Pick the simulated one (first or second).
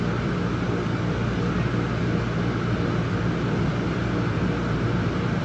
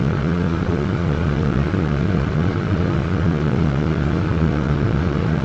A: second